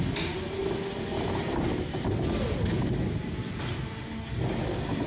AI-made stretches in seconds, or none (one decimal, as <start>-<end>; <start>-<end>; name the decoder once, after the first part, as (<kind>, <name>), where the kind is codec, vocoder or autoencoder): none